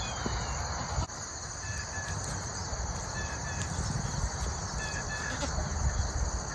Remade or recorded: recorded